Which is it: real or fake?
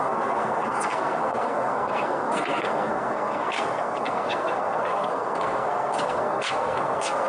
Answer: fake